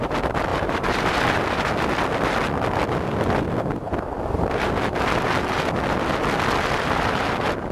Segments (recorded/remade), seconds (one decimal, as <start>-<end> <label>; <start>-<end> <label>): 0.0-0.5 recorded; 0.5-1.2 remade; 1.2-7.7 recorded